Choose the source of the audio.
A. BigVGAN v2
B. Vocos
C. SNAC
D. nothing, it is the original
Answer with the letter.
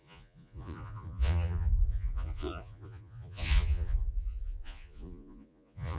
B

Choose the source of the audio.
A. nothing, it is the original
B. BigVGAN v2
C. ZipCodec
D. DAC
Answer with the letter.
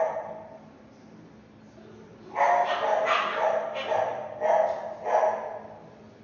A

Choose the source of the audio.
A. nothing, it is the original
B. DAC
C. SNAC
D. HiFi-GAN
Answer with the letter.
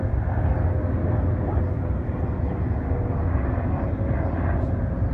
A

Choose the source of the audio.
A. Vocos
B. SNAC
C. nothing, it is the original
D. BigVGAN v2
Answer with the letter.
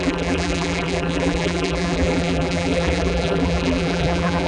D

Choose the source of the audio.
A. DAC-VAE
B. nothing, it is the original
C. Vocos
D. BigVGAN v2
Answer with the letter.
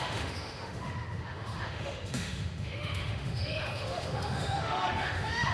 A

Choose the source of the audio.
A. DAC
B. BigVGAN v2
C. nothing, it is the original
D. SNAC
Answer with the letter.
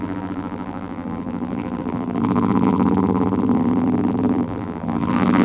B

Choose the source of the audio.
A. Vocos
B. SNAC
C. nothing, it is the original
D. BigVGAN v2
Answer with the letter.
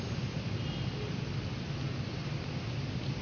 C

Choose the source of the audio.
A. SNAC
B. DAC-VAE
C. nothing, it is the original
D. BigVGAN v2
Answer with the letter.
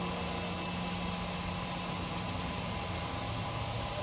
C